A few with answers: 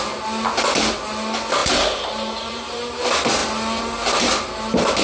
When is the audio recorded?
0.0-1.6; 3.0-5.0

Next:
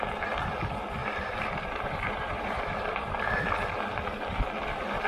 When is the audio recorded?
0.0-1.0; 3.3-5.1

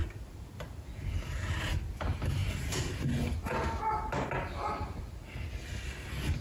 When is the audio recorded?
1.7-2.4; 3.0-6.4